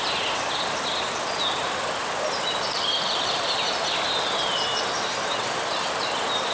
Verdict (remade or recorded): remade